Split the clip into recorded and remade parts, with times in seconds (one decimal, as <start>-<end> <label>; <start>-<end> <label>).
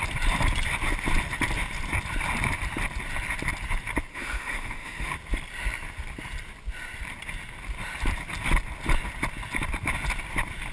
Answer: 0.0-4.1 recorded; 4.1-5.1 remade; 5.1-10.7 recorded